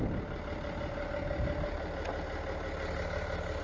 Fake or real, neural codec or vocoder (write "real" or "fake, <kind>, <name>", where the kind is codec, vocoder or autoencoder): real